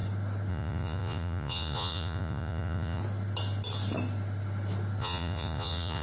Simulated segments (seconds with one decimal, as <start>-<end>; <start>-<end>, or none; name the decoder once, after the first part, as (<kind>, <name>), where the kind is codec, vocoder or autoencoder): 0.5-3.0 (vocoder, Vocos); 5.0-6.0